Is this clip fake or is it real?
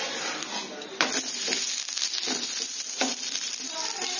real